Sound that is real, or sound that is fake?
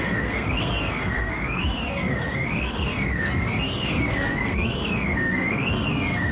fake